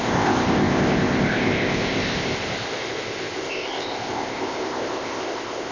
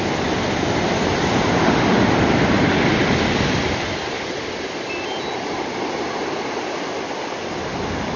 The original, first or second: second